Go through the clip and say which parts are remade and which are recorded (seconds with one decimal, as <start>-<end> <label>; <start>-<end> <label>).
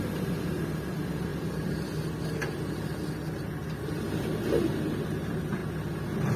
0.0-6.4 recorded